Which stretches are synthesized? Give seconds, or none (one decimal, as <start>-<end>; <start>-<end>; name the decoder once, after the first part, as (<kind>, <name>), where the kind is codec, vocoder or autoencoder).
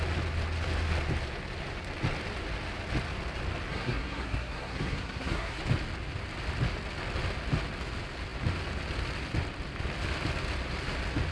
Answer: 3.7-5.6 (codec, SNAC)